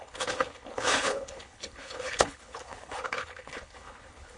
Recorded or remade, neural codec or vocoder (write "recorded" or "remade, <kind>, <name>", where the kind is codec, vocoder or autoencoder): remade, codec, HILCodec